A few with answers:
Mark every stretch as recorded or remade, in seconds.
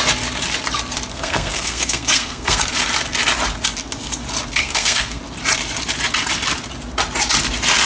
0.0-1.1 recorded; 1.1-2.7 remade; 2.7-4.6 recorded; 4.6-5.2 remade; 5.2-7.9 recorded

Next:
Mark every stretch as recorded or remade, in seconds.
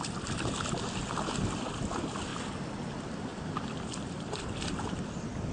0.0-5.5 recorded